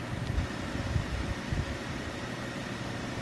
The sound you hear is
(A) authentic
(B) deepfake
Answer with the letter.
B